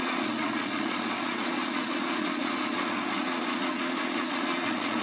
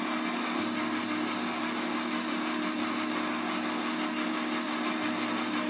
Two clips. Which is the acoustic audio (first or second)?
second